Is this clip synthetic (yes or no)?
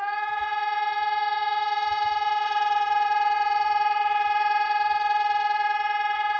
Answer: yes